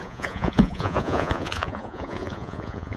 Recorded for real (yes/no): no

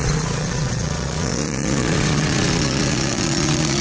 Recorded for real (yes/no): no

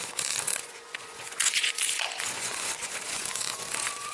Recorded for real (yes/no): no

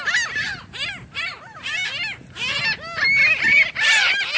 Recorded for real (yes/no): yes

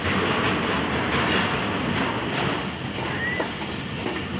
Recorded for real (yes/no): yes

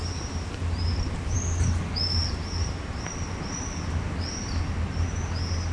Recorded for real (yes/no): yes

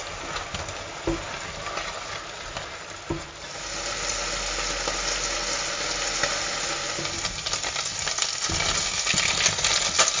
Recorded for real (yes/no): yes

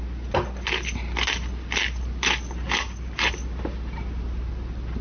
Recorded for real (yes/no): yes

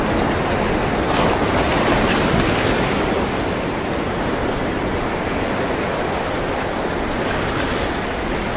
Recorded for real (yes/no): yes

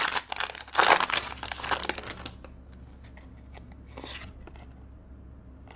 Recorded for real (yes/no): yes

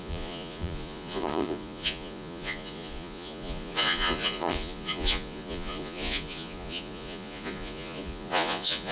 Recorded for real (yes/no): no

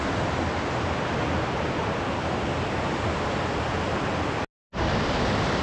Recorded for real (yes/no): yes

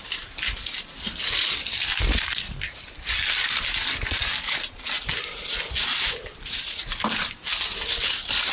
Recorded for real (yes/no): yes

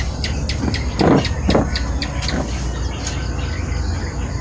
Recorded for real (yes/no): yes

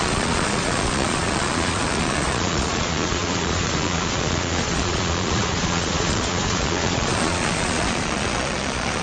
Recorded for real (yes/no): no